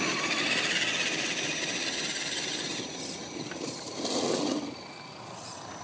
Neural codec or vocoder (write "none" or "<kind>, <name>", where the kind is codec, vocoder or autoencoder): none